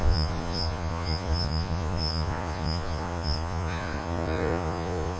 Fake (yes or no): yes